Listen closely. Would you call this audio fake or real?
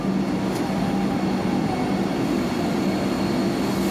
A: real